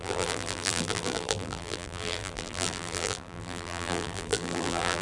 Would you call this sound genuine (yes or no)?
no